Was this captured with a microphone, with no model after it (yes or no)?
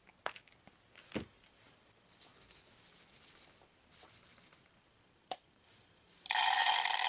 yes